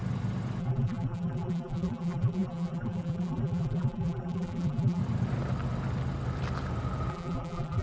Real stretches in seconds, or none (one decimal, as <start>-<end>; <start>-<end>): 0.0-0.6; 5.0-7.1